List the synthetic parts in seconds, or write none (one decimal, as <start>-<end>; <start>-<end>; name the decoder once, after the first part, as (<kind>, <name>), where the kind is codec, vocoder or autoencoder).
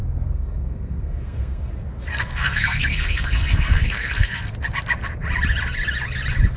0.0-1.7 (codec, SNAC); 2.1-4.5